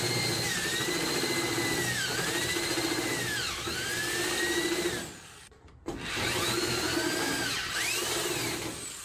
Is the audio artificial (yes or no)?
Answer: no